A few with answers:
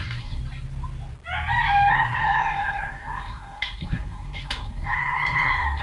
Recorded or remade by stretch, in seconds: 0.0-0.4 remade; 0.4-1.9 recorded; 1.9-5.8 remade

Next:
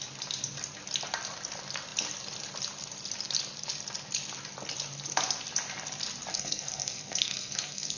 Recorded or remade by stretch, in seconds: 0.0-6.3 recorded; 6.3-8.0 remade

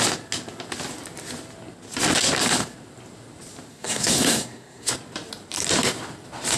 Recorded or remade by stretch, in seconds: 0.0-3.7 recorded; 3.7-4.9 remade; 4.9-6.6 recorded

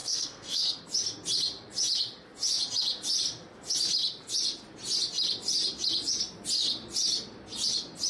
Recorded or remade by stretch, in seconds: 0.0-0.8 remade; 0.8-8.1 recorded

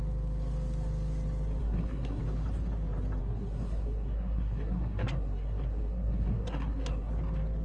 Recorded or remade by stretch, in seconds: 0.0-1.6 recorded; 1.6-2.2 remade; 2.2-3.2 recorded; 3.2-7.1 remade; 7.1-7.6 recorded